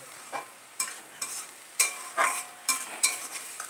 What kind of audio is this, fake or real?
fake